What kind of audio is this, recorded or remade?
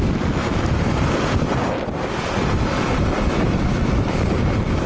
recorded